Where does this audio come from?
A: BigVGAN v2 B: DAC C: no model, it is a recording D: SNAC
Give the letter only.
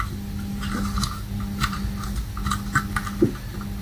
C